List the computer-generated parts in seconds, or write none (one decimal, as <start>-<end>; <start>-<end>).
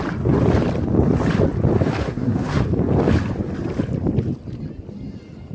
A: 2.0-2.6